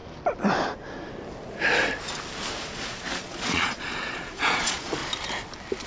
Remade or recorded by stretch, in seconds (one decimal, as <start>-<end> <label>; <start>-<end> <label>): 0.0-2.6 recorded; 2.6-5.0 remade; 5.0-5.9 recorded